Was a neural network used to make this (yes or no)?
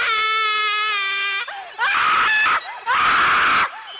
no